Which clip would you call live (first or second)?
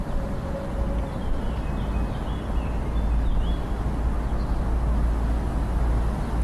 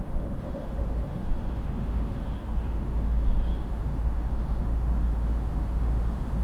first